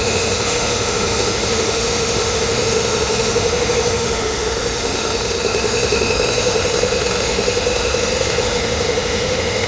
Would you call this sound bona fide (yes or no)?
no